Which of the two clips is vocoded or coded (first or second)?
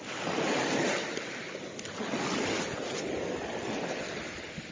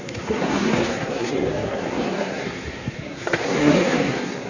second